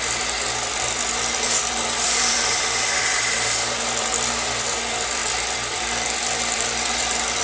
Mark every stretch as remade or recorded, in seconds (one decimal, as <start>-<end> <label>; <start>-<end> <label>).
0.0-7.4 remade